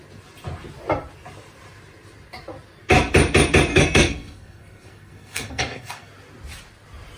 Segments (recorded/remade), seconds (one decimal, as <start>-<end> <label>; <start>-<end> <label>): 0.0-3.7 recorded; 3.7-6.1 remade; 6.1-7.2 recorded